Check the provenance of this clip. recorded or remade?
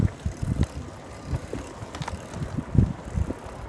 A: recorded